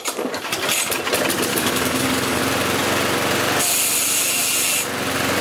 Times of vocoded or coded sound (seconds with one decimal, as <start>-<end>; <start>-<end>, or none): 1.5-2.4